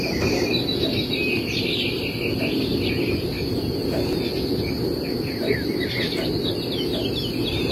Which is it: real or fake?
real